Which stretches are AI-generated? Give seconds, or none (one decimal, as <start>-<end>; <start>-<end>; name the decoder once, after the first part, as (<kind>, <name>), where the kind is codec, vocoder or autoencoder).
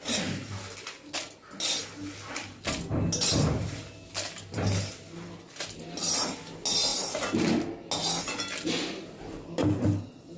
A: none